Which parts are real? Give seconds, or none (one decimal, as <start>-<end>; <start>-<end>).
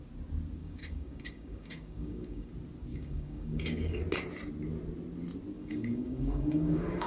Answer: 0.0-0.6; 2.5-2.9; 4.0-5.6